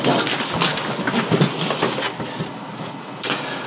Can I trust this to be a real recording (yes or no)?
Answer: yes